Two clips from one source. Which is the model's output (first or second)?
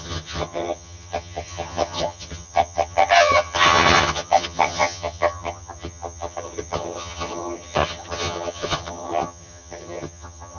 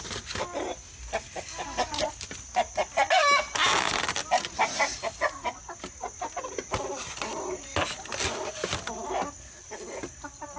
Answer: first